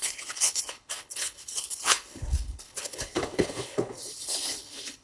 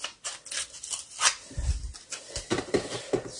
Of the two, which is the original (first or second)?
second